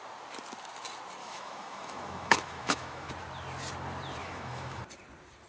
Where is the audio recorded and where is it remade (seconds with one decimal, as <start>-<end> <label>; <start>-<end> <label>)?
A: 0.0-1.2 recorded; 1.2-3.1 remade; 3.1-4.2 recorded; 4.2-4.8 remade; 4.8-5.5 recorded